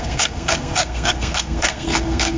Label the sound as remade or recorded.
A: remade